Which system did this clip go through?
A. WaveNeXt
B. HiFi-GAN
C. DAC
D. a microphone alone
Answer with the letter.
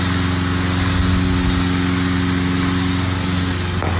D